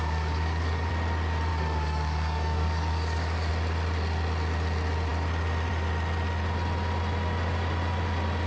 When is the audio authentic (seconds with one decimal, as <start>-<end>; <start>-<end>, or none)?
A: 0.9-1.5; 3.5-8.5